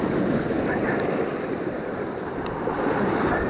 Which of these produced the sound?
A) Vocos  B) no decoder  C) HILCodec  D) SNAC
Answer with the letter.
B